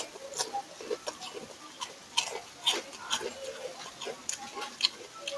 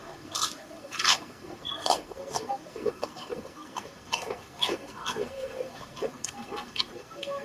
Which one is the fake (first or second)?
second